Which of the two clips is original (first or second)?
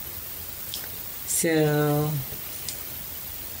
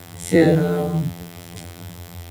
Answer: first